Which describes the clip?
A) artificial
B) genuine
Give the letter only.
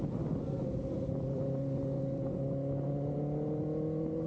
B